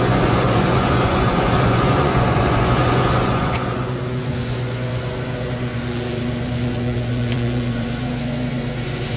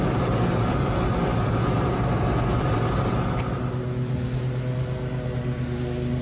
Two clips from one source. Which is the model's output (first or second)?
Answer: first